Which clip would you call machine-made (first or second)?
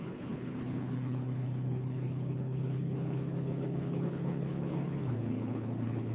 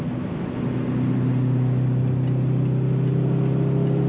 first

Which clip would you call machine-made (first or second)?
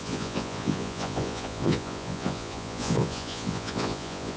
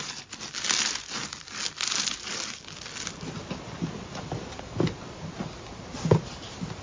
first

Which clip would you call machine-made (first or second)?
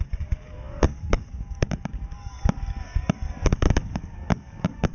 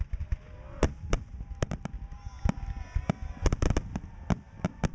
first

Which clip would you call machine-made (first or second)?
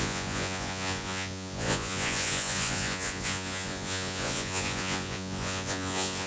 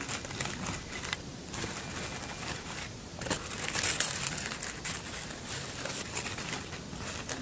first